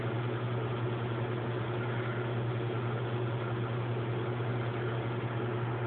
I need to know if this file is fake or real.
real